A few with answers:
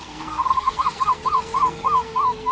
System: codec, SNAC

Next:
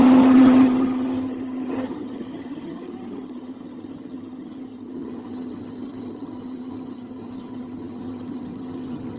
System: vocoder, HiFi-GAN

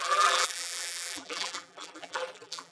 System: vocoder, BigVGAN v2